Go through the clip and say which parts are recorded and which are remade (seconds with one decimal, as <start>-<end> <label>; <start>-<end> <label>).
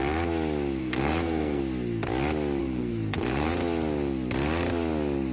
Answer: 0.0-0.8 recorded; 0.8-1.6 remade; 1.6-2.6 recorded; 2.6-3.5 remade; 3.5-5.3 recorded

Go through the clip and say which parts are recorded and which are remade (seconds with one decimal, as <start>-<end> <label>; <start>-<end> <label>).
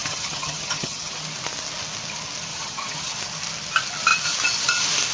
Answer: 0.0-1.2 remade; 1.2-2.5 recorded; 2.5-3.2 remade; 3.2-5.1 recorded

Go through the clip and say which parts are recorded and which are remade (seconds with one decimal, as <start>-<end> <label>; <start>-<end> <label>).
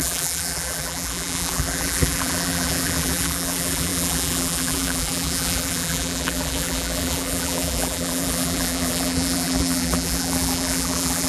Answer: 0.0-11.3 remade